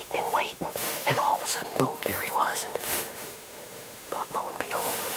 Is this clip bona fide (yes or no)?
no